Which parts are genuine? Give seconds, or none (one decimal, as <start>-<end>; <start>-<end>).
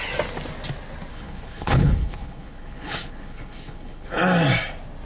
0.0-1.1; 4.1-5.0